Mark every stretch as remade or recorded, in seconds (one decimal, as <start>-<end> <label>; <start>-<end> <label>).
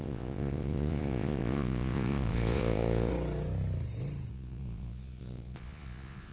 0.0-3.1 remade; 3.1-4.3 recorded; 4.3-6.3 remade